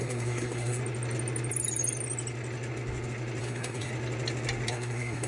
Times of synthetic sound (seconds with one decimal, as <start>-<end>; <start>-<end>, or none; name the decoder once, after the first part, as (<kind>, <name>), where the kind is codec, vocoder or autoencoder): 0.0-0.8 (codec, SNAC); 3.4-3.9; 4.7-5.3